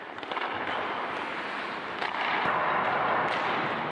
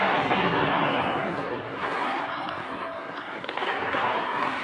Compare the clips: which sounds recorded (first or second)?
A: first